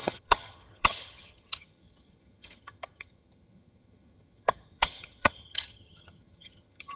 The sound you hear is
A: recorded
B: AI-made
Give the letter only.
B